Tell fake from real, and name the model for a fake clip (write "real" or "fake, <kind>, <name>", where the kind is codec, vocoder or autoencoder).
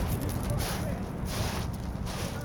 fake, vocoder, BigVGAN v2